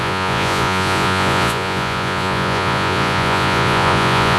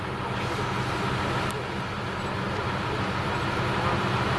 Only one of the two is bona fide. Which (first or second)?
second